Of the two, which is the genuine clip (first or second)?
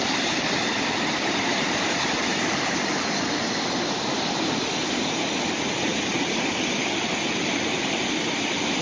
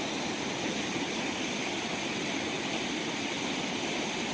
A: second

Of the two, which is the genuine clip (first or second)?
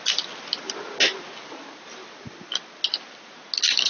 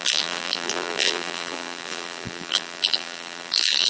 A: first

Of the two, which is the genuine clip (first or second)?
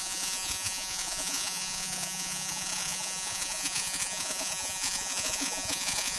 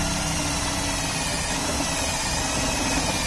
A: second